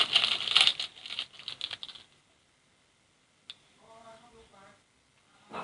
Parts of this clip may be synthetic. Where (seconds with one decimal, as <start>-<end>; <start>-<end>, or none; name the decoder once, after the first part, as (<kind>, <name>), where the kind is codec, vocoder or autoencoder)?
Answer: none